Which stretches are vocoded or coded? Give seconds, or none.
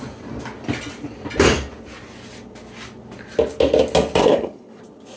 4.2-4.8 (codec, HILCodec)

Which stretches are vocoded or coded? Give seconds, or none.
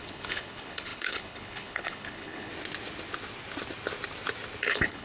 0.0-2.5 (codec, HILCodec); 4.6-5.0